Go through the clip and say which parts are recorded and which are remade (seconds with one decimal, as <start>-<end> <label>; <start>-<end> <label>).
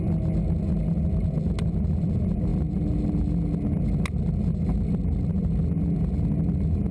0.0-6.9 recorded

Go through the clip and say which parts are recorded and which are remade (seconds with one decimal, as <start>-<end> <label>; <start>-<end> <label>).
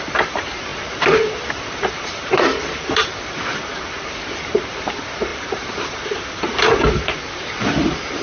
0.0-8.2 remade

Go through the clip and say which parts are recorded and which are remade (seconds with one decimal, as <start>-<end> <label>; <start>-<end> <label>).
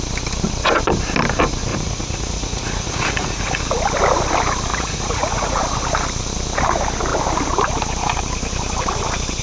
0.0-1.7 recorded; 1.7-3.6 remade; 3.6-4.7 recorded; 4.7-5.6 remade; 5.6-9.4 recorded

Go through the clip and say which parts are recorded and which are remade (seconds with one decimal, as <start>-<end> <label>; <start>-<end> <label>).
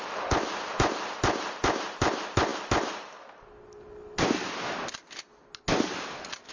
0.0-6.5 recorded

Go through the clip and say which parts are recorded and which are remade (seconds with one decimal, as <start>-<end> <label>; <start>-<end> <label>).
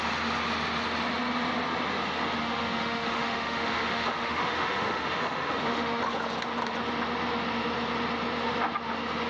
0.0-2.4 recorded; 2.4-6.0 remade; 6.0-9.3 recorded